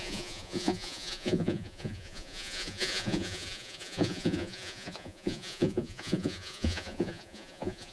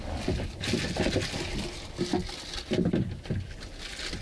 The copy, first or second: first